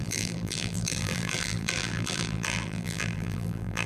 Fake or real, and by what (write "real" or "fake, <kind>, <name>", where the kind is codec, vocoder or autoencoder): fake, vocoder, BigVGAN v2